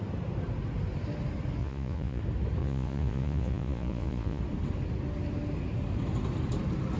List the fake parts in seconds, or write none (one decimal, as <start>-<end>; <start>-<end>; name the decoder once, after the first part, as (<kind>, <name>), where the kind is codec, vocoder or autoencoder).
1.6-2.2 (vocoder, Vocos); 2.6-4.4